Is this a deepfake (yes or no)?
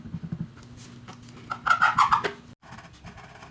no